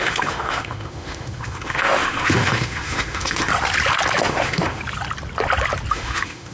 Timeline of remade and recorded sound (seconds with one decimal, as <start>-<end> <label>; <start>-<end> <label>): 0.0-3.5 remade; 3.5-4.2 recorded; 4.2-4.8 remade; 4.8-5.9 recorded; 5.9-6.5 remade